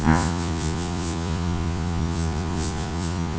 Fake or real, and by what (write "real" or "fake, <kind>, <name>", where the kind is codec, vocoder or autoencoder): fake, vocoder, Vocos